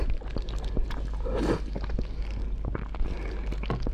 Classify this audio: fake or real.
real